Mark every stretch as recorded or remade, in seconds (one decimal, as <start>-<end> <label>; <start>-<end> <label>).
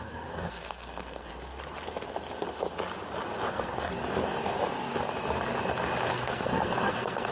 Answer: 0.0-1.3 remade; 1.3-3.5 recorded; 3.5-3.9 remade; 3.9-6.1 recorded; 6.1-7.3 remade